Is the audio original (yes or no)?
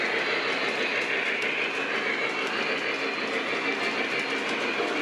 yes